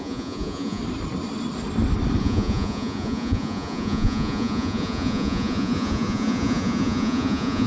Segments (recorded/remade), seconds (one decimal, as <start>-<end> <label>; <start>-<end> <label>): 0.0-0.8 remade; 0.8-2.2 recorded; 2.2-7.7 remade